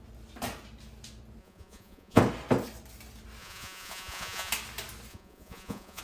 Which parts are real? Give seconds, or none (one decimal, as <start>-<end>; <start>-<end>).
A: 0.0-1.4; 2.2-3.4; 4.5-5.1